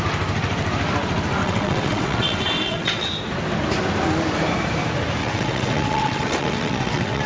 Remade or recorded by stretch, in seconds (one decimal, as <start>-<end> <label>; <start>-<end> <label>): 0.0-1.4 recorded; 1.4-3.1 remade; 3.1-5.2 recorded; 5.2-7.3 remade